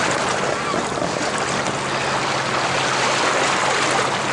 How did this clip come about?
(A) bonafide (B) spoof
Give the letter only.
A